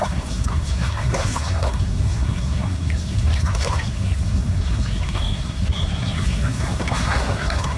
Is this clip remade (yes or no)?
yes